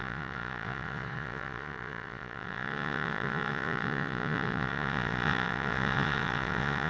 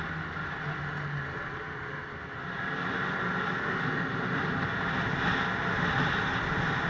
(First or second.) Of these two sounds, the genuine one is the second